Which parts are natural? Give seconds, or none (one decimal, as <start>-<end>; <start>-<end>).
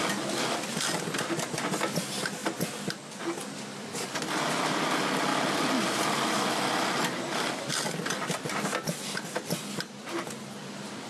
0.0-11.1